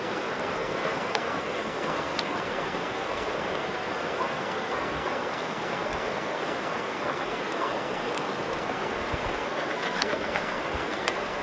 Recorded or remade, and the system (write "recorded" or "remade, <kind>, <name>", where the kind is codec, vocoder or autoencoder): remade, codec, SNAC